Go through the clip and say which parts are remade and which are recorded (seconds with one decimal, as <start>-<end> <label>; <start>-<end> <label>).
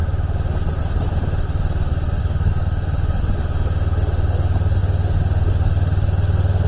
0.0-2.2 recorded; 2.2-3.2 remade; 3.2-6.7 recorded